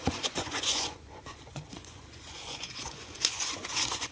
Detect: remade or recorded remade